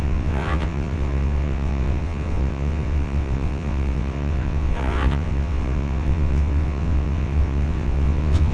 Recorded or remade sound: remade